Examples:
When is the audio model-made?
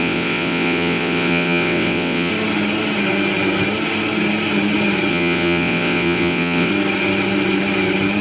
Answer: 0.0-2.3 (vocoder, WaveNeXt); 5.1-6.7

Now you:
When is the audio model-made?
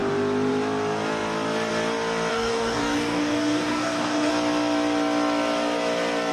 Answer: 2.3-4.3 (codec, DAC)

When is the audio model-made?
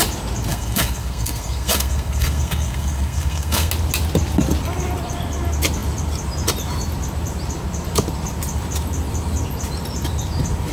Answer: 0.5-3.7 (codec, SNAC)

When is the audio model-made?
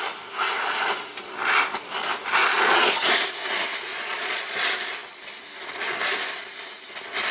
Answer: 2.4-3.1 (vocoder, Vocos); 3.9-4.6